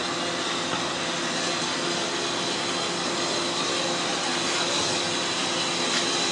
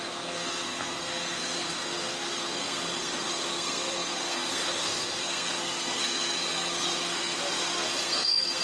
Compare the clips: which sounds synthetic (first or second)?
second